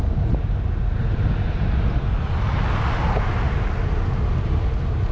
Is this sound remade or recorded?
recorded